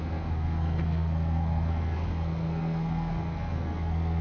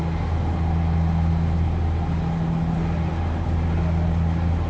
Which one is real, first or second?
second